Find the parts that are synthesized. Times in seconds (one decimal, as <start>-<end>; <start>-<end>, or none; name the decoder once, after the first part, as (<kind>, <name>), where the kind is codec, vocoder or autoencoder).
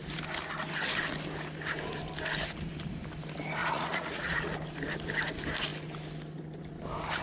3.6-4.5 (vocoder, Vocos)